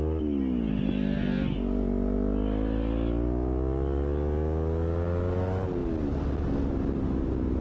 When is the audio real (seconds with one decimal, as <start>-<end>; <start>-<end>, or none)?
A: 0.0-7.6